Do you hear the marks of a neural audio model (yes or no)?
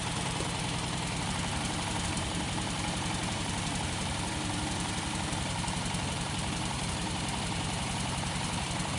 yes